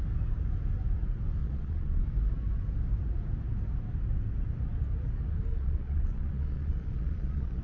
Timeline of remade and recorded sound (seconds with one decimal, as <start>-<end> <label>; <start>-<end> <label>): 0.0-1.4 recorded; 1.4-2.0 remade; 2.0-5.5 recorded; 5.5-7.6 remade